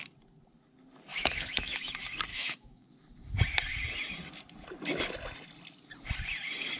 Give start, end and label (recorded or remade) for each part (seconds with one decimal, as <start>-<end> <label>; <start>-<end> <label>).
0.0-1.1 recorded; 1.1-1.9 remade; 1.9-2.3 recorded; 2.3-2.8 remade; 2.8-6.8 recorded